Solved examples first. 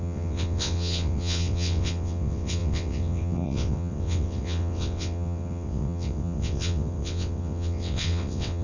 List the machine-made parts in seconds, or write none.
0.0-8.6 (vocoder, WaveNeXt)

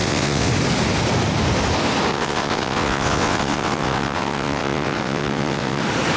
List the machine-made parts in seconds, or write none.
0.0-0.5 (vocoder, WaveNeXt); 2.1-5.8

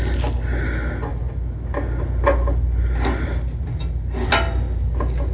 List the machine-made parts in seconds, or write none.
none